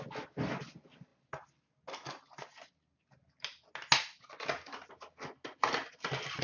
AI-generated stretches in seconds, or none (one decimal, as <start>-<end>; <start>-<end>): none